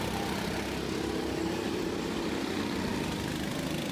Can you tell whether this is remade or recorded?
remade